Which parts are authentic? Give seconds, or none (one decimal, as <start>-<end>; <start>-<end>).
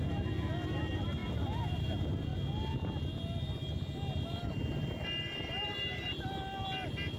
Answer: 0.0-1.2; 1.8-7.2